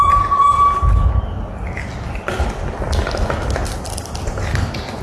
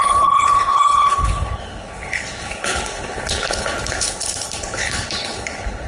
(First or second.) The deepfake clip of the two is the second